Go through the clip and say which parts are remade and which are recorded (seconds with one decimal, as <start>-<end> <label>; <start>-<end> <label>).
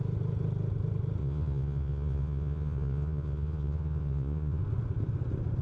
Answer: 0.0-1.2 recorded; 1.2-4.6 remade; 4.6-5.6 recorded